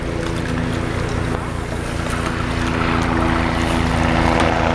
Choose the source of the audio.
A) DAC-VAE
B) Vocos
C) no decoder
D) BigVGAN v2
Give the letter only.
C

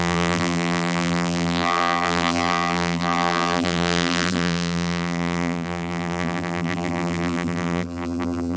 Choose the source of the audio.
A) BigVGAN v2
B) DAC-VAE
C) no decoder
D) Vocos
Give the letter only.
A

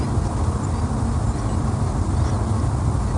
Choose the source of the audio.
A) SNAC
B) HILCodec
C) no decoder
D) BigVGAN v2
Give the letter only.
C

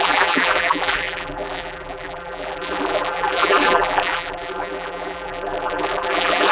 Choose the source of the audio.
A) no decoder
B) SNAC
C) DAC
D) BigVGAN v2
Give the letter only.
D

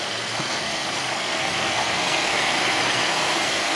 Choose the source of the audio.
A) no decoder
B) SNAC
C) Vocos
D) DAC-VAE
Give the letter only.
B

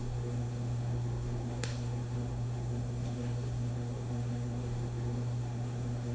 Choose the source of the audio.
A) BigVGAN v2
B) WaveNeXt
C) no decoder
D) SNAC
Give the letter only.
D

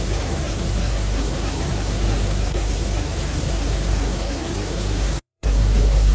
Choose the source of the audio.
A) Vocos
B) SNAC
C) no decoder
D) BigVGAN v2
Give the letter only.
B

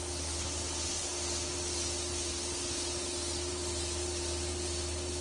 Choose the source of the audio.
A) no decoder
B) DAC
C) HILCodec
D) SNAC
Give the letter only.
A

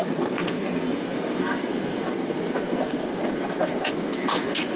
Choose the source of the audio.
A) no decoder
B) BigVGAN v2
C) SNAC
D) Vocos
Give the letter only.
C